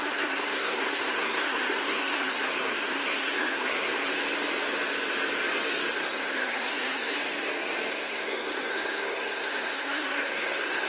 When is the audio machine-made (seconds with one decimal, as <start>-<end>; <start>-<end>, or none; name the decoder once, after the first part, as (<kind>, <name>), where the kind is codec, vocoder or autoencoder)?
0.0-4.1 (codec, SNAC); 5.9-7.3; 7.9-10.9

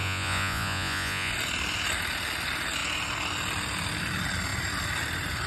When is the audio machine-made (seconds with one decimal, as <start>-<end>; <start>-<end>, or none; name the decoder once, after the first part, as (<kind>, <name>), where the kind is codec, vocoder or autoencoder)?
0.0-1.3 (vocoder, Vocos)

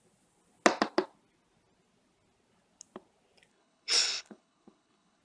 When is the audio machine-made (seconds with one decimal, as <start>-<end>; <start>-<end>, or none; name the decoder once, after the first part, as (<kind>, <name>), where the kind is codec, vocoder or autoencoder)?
3.5-5.2 (codec, HILCodec)